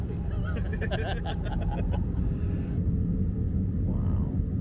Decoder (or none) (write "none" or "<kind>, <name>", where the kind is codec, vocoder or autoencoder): none